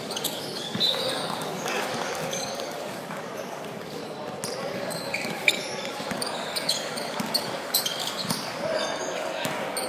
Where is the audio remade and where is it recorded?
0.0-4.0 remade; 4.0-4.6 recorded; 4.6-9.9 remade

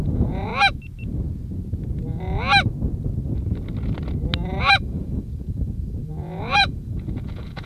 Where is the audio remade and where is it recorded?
0.0-0.5 remade; 0.5-4.6 recorded; 4.6-7.7 remade

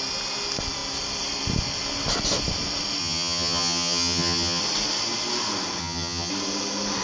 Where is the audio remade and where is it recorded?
0.0-3.0 recorded; 3.0-4.6 remade; 4.6-5.8 recorded; 5.8-6.3 remade; 6.3-7.0 recorded

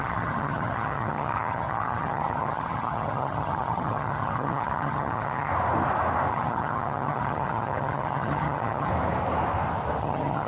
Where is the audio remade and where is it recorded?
0.0-5.5 remade; 5.5-6.3 recorded; 6.3-8.9 remade; 8.9-10.0 recorded; 10.0-10.5 remade

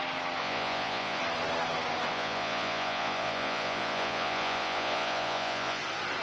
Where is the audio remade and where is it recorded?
0.0-0.4 recorded; 0.4-1.2 remade; 1.2-2.1 recorded; 2.1-5.8 remade; 5.8-6.2 recorded